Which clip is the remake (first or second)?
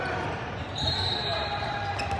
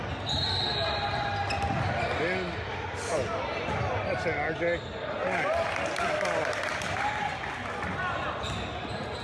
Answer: first